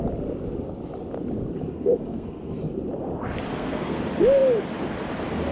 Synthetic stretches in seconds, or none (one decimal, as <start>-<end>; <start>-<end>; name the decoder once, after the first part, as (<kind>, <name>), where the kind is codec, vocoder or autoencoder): 1.7-2.6 (codec, SNAC); 3.5-4.0